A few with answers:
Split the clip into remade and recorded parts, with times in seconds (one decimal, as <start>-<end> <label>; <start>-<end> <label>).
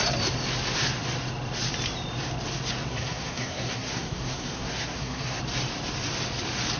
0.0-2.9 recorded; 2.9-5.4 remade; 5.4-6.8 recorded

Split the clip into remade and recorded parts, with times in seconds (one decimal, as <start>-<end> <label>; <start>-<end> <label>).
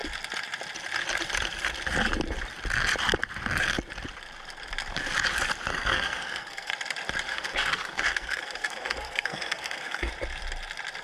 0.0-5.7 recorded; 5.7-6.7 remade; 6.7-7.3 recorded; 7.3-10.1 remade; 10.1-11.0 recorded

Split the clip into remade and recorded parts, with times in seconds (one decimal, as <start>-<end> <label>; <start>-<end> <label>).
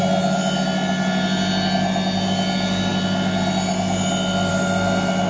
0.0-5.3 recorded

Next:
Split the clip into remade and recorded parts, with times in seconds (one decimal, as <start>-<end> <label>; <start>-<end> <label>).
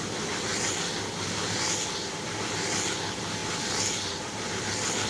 0.0-5.1 recorded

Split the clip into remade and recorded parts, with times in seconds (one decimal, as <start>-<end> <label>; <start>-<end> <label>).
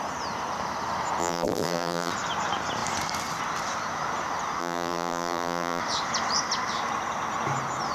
0.0-1.2 recorded; 1.2-2.1 remade; 2.1-4.6 recorded; 4.6-5.8 remade; 5.8-7.9 recorded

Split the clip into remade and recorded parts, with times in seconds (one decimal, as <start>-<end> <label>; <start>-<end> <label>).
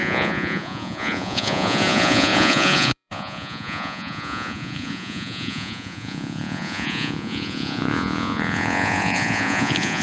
0.0-10.0 remade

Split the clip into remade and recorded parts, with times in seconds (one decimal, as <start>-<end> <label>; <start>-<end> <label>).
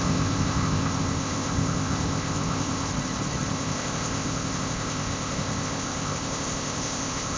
0.0-2.9 remade; 2.9-3.5 recorded; 3.5-7.4 remade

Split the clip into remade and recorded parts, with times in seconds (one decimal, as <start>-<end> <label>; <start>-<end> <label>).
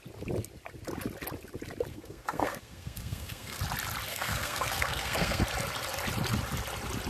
0.0-1.9 recorded; 1.9-3.6 remade; 3.6-4.1 recorded; 4.1-5.4 remade; 5.4-7.1 recorded